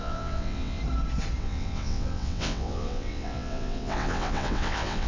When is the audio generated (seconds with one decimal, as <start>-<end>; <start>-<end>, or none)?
0.0-0.8; 1.4-5.1